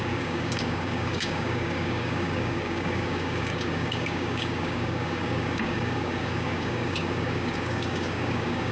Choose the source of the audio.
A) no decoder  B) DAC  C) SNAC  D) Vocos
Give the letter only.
B